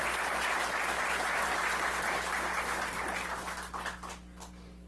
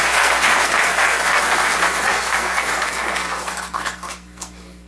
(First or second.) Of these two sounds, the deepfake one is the second